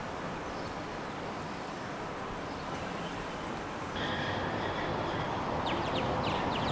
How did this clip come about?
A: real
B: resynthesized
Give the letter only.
B